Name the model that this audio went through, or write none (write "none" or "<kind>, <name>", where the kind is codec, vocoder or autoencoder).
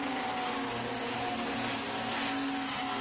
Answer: none